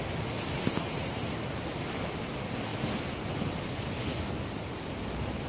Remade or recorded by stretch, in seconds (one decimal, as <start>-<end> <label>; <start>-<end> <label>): 0.0-1.2 recorded; 1.2-2.3 remade; 2.3-5.5 recorded